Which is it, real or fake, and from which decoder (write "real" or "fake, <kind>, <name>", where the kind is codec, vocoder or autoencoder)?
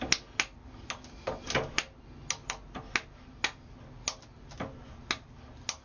real